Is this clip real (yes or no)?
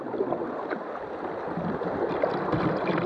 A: yes